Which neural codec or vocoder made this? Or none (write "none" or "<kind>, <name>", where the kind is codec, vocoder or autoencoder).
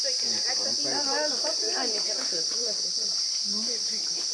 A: none